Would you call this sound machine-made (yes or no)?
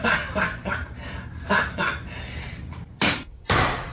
yes